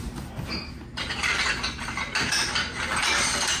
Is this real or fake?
real